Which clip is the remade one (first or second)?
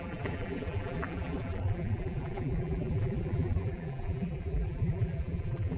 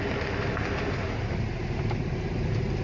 first